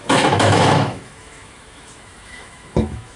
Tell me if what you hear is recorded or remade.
remade